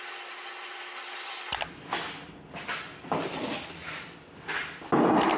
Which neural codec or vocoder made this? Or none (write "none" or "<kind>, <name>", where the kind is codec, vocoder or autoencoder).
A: none